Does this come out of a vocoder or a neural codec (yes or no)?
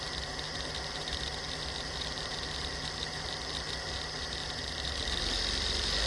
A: yes